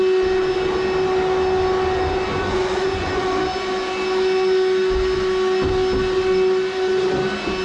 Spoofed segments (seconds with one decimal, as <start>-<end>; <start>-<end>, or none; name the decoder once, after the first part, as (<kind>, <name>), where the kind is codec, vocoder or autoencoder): 2.3-3.4 (vocoder, Vocos)